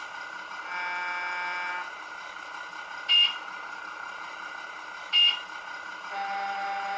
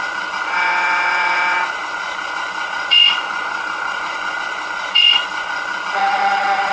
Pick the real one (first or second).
first